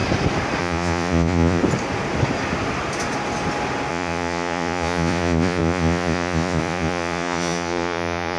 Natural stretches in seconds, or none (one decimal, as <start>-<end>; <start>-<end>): 0.0-0.6; 1.6-3.9